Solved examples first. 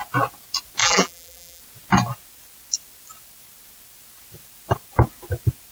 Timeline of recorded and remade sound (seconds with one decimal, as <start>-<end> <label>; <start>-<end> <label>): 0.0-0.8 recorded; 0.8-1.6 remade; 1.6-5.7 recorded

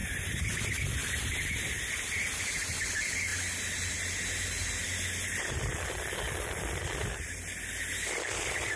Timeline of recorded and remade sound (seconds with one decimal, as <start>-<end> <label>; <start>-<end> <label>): 0.0-1.0 recorded; 1.0-2.4 remade; 2.4-8.8 recorded

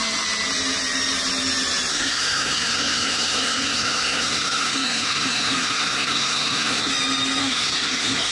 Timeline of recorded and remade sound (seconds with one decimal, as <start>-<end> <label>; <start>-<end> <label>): 0.0-1.9 recorded; 1.9-6.9 remade; 6.9-7.4 recorded; 7.4-8.3 remade

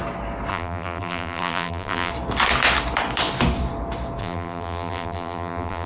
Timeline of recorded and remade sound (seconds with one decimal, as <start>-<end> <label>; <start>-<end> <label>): 0.0-0.5 recorded; 0.5-2.1 remade; 2.1-4.2 recorded; 4.2-5.9 remade

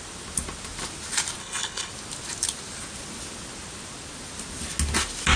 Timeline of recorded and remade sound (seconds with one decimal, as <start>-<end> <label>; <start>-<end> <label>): 0.0-1.4 recorded; 1.4-1.9 remade; 1.9-5.4 recorded